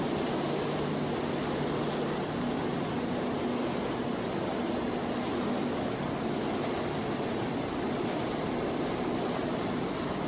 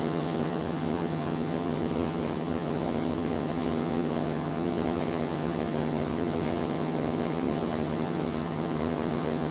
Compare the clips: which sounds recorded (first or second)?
first